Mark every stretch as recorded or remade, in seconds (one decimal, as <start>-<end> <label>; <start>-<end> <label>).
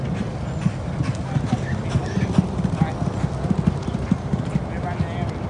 0.0-5.5 recorded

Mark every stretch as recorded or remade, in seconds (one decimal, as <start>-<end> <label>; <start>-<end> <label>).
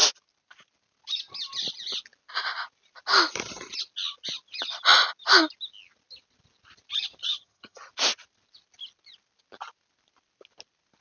0.0-7.2 recorded; 7.2-7.9 remade; 7.9-11.0 recorded